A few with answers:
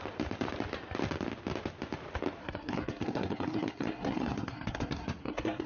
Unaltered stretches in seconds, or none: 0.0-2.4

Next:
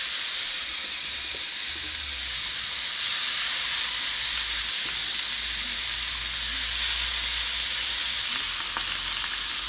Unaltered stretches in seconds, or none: 0.0-9.7

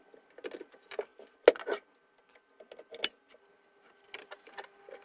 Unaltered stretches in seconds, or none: 0.0-5.0